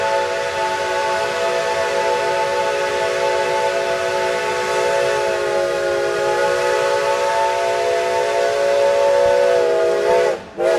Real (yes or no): yes